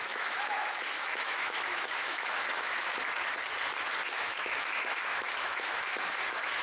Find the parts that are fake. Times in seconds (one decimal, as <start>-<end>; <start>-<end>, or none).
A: 0.0-2.9; 4.1-6.6